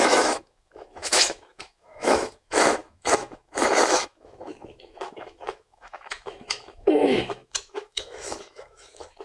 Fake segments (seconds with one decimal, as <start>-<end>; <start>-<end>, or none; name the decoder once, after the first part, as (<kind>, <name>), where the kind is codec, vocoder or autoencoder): 0.0-9.2 (autoencoder, DAC-VAE)